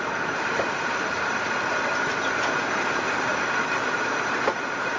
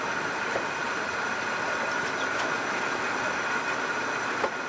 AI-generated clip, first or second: first